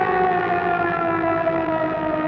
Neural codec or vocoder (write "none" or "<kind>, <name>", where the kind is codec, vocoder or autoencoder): vocoder, BigVGAN v2